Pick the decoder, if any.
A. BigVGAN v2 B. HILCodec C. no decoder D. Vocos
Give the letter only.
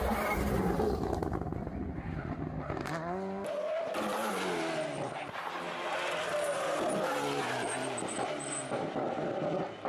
C